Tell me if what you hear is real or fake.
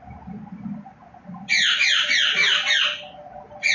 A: real